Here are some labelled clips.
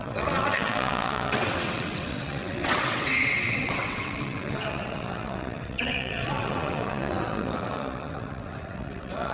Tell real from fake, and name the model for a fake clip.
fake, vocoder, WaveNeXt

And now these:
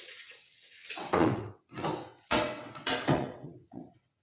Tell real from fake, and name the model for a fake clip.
fake, vocoder, WaveNeXt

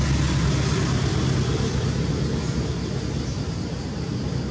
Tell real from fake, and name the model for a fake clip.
real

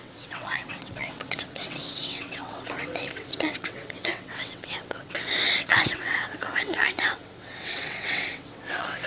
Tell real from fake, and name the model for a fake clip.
fake, vocoder, WaveNeXt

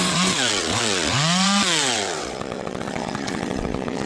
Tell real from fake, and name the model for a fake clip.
fake, vocoder, WaveNeXt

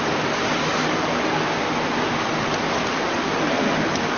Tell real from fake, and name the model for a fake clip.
real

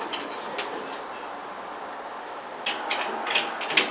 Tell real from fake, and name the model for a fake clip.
real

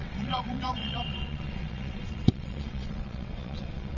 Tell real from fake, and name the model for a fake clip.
fake, vocoder, WaveNeXt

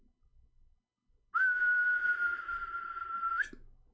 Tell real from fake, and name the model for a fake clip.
real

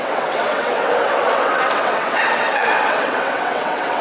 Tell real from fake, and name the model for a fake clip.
fake, vocoder, WaveNeXt